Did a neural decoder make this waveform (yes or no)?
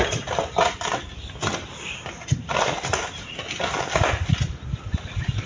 no